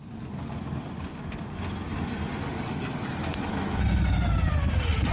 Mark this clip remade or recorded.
recorded